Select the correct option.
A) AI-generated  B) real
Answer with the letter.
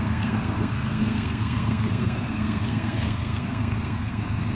A